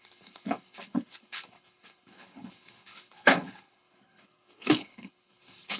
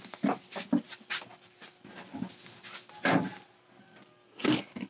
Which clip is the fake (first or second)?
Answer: first